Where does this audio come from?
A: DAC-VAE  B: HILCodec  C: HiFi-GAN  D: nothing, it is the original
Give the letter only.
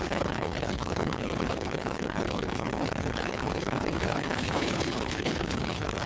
B